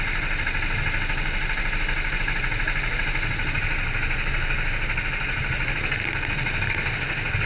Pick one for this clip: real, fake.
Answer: real